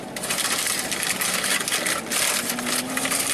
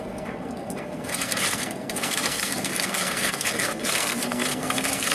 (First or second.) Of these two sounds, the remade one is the second